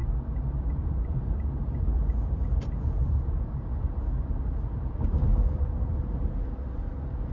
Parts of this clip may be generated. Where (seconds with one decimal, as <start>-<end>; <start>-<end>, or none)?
0.7-3.7; 4.3-7.3